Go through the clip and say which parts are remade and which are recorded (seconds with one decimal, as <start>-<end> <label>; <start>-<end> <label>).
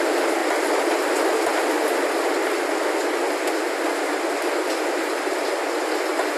0.0-0.4 recorded; 0.4-0.9 remade; 0.9-6.4 recorded